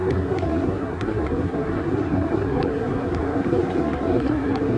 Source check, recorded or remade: remade